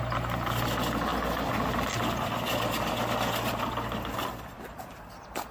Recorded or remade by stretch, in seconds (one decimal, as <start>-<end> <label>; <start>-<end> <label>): 0.0-5.5 recorded